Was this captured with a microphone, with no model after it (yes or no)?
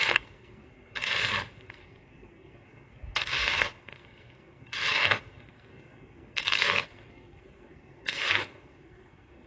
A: no